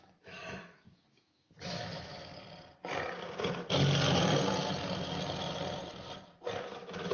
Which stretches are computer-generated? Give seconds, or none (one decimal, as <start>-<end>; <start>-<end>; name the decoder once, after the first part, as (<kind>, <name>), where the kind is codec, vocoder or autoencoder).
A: 0.0-2.3 (autoencoder, DAC-VAE); 6.6-7.1